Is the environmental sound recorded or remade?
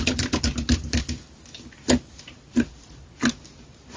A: recorded